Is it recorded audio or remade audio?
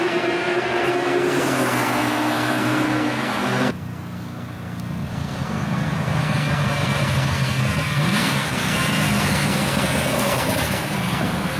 remade